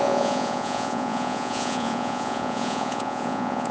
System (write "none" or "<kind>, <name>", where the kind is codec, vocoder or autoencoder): vocoder, Vocos